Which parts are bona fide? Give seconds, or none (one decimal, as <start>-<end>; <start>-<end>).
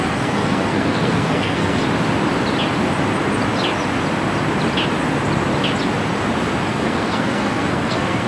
1.8-6.7